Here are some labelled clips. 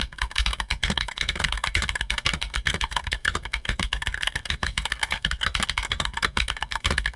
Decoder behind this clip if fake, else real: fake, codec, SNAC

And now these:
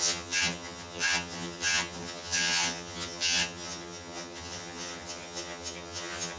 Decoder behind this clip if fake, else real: fake, vocoder, HiFi-GAN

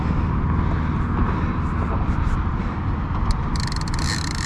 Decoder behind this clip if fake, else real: real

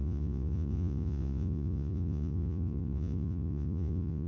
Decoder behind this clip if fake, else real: fake, vocoder, Vocos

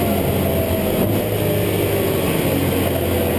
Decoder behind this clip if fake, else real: real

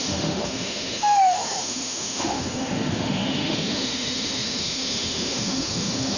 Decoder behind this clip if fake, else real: fake, autoencoder, DAC-VAE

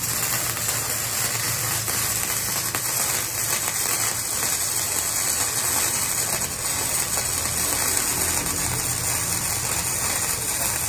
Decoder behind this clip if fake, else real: real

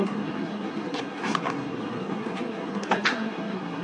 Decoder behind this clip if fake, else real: fake, codec, SNAC